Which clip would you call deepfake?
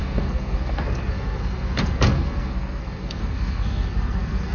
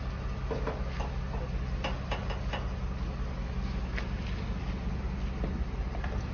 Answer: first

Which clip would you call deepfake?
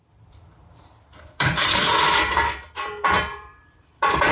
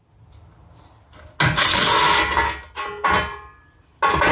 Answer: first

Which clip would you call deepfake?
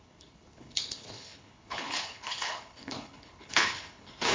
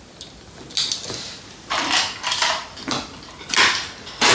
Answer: first